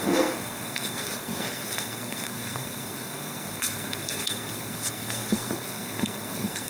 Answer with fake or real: fake